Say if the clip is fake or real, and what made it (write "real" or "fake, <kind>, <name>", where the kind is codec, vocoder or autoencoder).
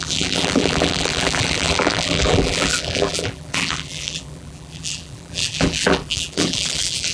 fake, vocoder, BigVGAN v2